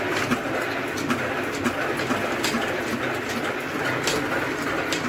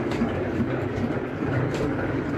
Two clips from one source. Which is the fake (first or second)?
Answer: second